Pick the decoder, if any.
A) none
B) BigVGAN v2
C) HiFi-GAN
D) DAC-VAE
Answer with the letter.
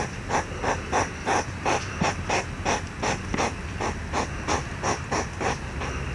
A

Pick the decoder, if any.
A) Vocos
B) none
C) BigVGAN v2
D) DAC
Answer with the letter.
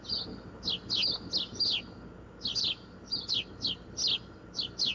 B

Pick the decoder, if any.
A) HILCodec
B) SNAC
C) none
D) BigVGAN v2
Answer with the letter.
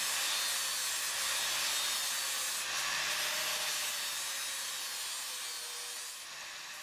C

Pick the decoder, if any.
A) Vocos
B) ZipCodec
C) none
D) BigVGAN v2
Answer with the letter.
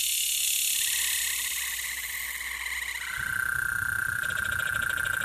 C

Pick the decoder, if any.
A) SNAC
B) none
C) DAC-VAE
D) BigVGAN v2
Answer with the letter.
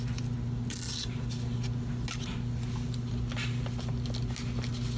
B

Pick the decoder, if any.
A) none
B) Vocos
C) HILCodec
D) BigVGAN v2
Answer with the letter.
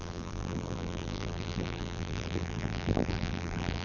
D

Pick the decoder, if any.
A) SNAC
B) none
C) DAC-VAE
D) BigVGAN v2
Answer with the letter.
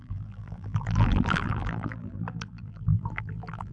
D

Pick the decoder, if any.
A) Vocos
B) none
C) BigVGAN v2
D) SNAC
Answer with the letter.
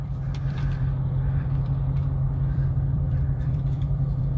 C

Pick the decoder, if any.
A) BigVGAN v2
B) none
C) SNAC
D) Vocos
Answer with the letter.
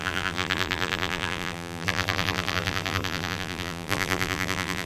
A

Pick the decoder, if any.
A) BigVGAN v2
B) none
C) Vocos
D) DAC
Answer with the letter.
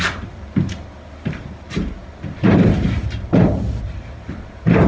A